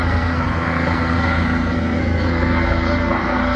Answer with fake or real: fake